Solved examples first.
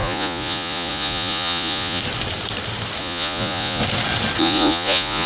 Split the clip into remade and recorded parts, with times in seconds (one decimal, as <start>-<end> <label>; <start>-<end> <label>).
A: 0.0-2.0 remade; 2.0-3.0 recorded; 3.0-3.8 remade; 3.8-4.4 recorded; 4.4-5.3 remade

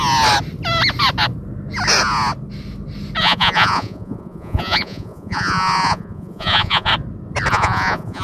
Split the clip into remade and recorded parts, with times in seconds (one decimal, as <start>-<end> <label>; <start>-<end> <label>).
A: 0.0-3.2 recorded; 3.2-6.9 remade; 6.9-7.5 recorded; 7.5-8.2 remade

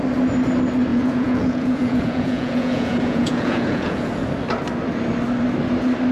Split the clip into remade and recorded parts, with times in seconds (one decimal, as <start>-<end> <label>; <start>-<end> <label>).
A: 0.0-0.9 recorded; 0.9-4.1 remade; 4.1-6.1 recorded

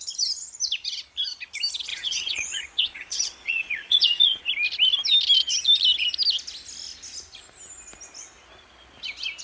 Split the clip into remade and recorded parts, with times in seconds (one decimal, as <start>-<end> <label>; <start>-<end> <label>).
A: 0.0-1.9 recorded; 1.9-4.4 remade; 4.4-9.4 recorded

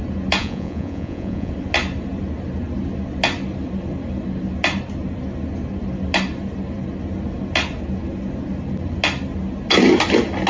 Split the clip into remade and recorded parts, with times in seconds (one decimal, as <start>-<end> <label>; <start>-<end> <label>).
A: 0.0-0.4 recorded; 0.4-1.5 remade; 1.5-10.5 recorded

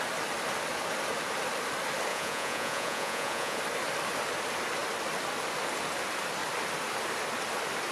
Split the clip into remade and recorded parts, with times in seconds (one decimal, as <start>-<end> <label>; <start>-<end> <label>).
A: 0.0-2.1 recorded; 2.1-3.6 remade; 3.6-7.9 recorded

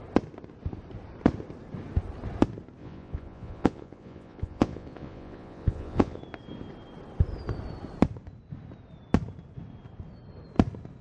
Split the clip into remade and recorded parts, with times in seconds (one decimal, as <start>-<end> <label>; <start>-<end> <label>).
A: 0.0-2.8 recorded; 2.8-6.2 remade; 6.2-11.0 recorded

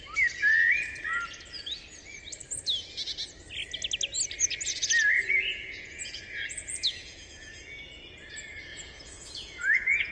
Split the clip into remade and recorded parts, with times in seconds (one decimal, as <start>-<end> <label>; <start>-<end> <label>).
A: 0.0-5.1 recorded; 5.1-7.8 remade; 7.8-8.7 recorded; 8.7-10.1 remade